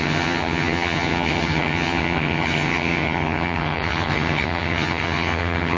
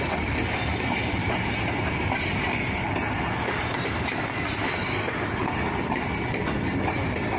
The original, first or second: second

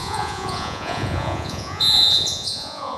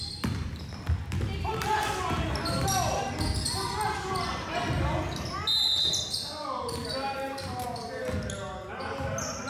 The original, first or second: second